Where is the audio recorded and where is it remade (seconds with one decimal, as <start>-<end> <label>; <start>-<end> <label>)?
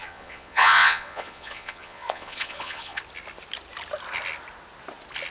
0.0-3.0 remade; 3.0-5.3 recorded